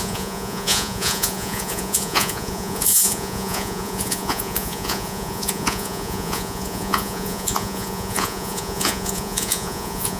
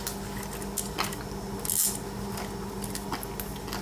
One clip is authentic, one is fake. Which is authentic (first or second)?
second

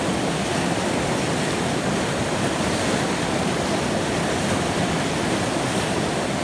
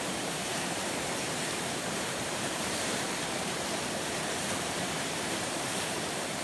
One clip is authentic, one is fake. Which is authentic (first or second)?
first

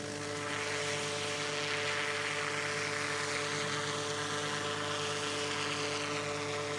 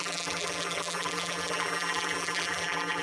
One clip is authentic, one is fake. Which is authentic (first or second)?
first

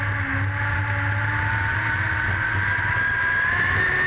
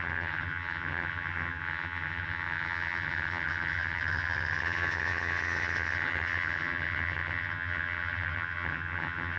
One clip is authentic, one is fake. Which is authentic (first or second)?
first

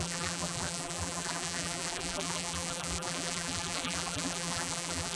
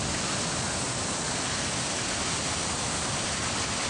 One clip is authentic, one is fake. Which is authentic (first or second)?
second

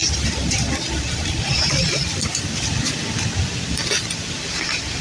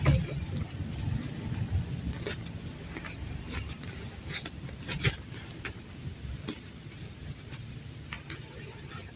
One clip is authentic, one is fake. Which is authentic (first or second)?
second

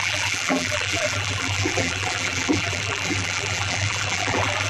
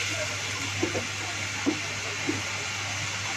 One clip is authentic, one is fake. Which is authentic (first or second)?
second